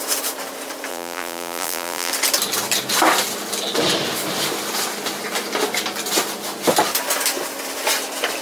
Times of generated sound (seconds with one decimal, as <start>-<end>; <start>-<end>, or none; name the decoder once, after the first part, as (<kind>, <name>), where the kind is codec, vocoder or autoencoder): 0.9-2.1 (vocoder, BigVGAN v2)